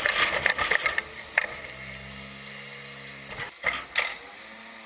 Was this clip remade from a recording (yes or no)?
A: yes